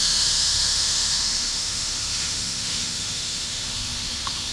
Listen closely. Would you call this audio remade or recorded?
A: remade